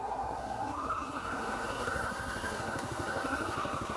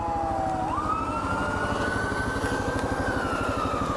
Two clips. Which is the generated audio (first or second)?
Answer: first